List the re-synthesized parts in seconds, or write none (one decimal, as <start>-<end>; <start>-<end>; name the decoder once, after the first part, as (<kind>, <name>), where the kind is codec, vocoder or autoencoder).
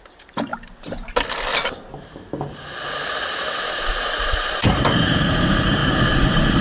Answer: 0.0-0.5 (vocoder, BigVGAN v2); 3.9-5.8